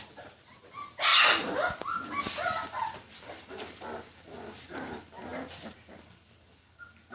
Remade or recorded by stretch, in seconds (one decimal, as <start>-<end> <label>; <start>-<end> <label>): 0.0-1.1 remade; 1.1-2.2 recorded; 2.2-7.1 remade